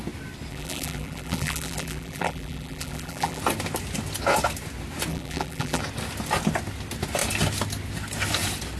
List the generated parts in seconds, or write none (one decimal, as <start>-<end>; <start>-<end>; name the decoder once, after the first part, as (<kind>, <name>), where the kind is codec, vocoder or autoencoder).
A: 0.5-3.4 (vocoder, BigVGAN v2); 5.1-5.8